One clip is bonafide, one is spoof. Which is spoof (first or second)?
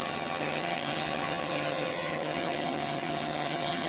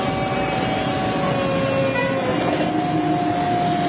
first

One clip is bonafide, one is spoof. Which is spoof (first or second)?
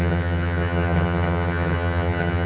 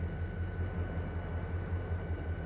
first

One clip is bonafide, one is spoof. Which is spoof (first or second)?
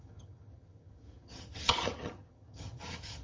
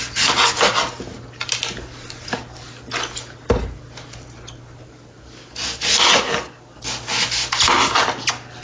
first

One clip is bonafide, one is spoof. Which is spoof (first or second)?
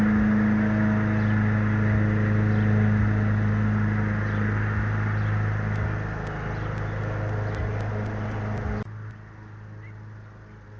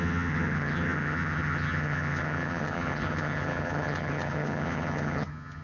second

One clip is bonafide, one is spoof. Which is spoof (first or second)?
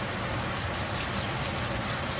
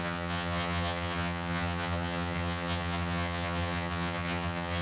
second